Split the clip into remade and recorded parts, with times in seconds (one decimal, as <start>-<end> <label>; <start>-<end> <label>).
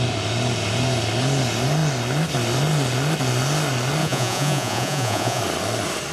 0.0-4.0 recorded; 4.0-5.4 remade; 5.4-6.1 recorded